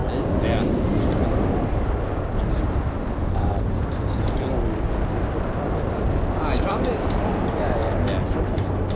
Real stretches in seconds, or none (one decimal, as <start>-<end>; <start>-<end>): 0.0-2.4; 3.9-7.2; 7.8-8.4